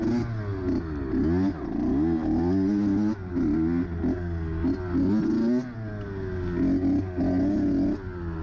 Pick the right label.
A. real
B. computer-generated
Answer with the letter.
A